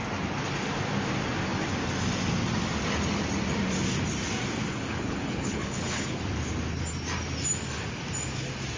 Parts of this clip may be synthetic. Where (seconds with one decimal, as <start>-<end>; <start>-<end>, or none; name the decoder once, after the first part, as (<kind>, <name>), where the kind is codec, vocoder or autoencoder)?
4.7-6.2 (codec, HILCodec)

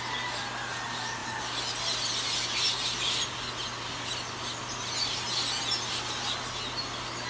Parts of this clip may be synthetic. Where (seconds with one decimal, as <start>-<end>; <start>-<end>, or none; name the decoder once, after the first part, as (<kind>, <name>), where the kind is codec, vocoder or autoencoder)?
none